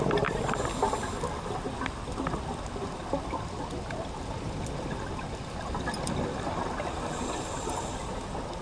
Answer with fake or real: real